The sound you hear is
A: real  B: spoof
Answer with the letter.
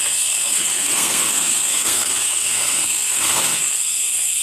B